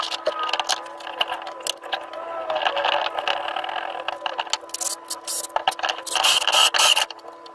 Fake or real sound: real